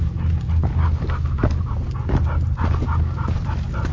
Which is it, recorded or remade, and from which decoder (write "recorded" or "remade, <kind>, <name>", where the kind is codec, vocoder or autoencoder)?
recorded